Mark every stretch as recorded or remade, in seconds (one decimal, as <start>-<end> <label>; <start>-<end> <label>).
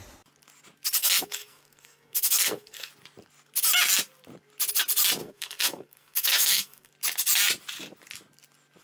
0.0-1.0 recorded; 1.0-2.9 remade; 2.9-5.2 recorded; 5.2-6.9 remade; 6.9-8.8 recorded